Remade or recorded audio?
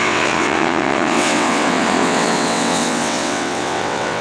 remade